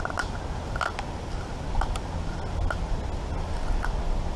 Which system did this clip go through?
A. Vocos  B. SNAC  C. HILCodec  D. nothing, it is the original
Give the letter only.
D